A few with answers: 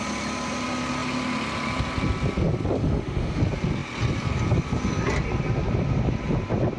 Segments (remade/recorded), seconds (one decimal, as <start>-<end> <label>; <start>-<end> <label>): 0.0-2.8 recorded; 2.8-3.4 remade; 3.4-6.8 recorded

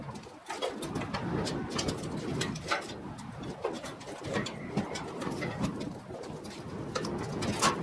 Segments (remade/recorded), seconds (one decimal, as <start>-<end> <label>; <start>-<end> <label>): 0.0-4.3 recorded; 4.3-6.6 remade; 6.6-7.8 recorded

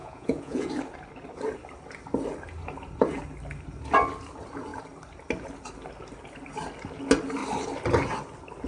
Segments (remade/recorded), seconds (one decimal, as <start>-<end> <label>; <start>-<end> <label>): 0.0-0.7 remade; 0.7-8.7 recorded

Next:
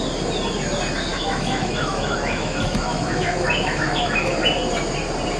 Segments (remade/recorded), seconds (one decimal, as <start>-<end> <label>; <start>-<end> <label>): 0.0-1.1 recorded; 1.1-4.3 remade; 4.3-5.4 recorded